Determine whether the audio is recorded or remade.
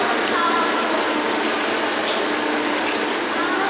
recorded